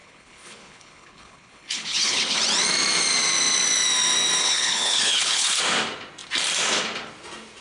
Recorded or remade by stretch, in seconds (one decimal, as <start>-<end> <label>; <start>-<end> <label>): 0.0-2.4 remade; 2.4-4.4 recorded; 4.4-5.6 remade; 5.6-7.6 recorded